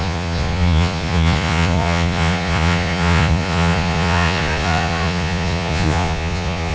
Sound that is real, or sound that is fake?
fake